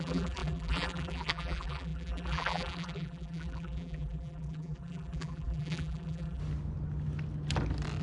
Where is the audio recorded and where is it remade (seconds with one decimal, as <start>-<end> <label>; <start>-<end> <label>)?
0.0-6.4 remade; 6.4-8.0 recorded